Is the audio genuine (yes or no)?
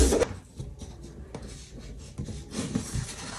yes